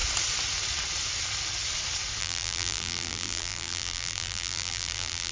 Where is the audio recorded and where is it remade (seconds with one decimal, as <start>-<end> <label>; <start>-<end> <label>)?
0.0-2.2 recorded; 2.2-5.3 remade